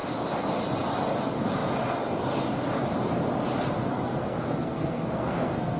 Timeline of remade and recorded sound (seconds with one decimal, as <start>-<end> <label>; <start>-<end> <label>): 0.0-3.8 recorded; 3.8-5.8 remade